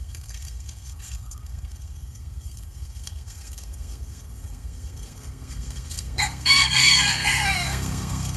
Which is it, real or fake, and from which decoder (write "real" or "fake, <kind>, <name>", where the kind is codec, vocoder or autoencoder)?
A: fake, codec, SNAC